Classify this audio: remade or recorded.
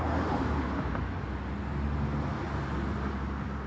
recorded